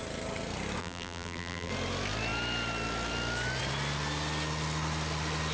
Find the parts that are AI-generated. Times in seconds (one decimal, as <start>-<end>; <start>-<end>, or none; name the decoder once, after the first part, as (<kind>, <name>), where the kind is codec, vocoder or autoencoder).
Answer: 0.8-1.7 (vocoder, BigVGAN v2)